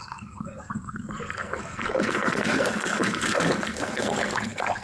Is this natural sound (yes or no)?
no